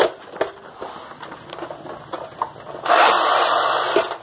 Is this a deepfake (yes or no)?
no